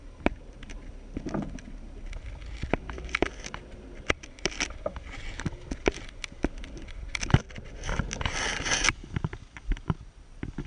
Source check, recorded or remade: recorded